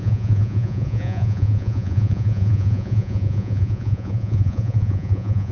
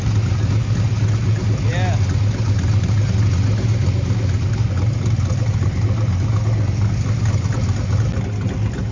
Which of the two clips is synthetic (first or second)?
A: first